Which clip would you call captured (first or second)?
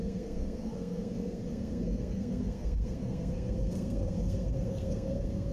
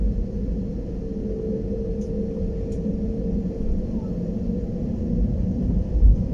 second